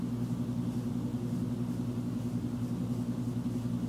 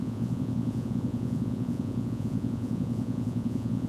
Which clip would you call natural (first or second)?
first